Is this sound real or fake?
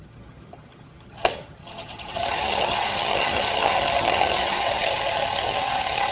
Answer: fake